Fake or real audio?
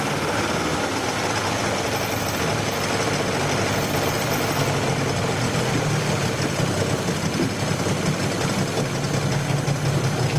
real